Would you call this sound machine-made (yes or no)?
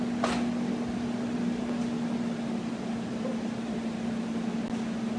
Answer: no